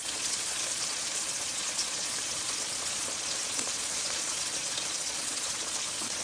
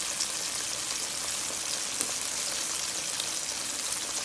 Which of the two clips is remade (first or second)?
first